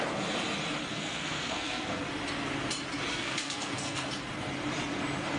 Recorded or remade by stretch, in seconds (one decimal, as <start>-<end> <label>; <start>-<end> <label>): 0.0-0.9 recorded; 0.9-2.0 remade; 2.0-3.1 recorded; 3.1-4.1 remade; 4.1-5.4 recorded